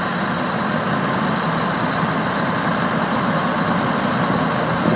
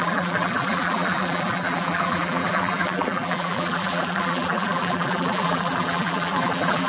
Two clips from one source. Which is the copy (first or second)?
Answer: second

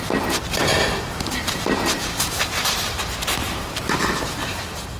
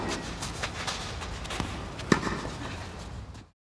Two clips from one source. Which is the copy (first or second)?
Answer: first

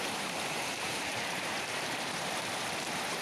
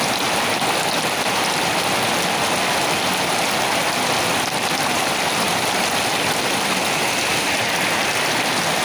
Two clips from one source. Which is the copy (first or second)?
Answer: first